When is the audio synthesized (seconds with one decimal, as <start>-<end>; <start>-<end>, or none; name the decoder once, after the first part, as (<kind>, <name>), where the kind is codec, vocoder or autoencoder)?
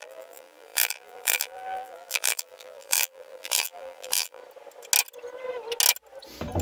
0.0-4.4 (vocoder, BigVGAN v2)